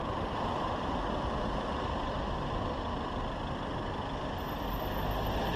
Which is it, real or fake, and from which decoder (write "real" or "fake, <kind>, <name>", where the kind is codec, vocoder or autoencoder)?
real